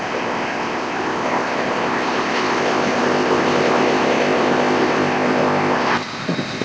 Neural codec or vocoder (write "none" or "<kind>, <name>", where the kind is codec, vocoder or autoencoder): codec, ZipCodec